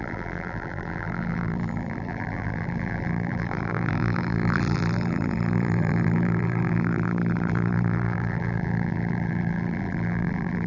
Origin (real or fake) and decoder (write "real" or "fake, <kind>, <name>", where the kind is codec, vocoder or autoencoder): fake, vocoder, BigVGAN v2